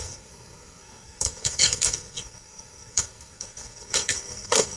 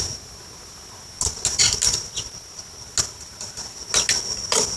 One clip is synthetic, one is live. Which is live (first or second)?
second